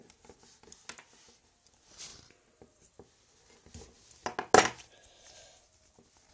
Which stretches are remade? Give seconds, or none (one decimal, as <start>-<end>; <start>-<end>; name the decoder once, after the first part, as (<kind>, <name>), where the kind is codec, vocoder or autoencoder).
none